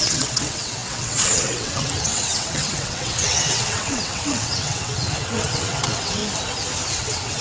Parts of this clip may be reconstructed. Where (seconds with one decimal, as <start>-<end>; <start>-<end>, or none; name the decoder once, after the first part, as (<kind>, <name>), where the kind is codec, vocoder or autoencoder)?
0.0-6.2 (vocoder, WaveNeXt); 6.9-7.4